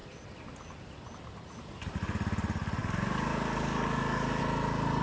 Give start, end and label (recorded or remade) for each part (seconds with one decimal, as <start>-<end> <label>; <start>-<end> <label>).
0.0-2.8 recorded; 2.8-4.4 remade; 4.4-5.0 recorded